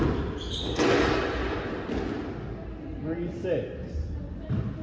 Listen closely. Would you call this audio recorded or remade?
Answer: recorded